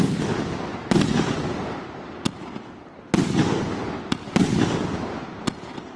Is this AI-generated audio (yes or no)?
no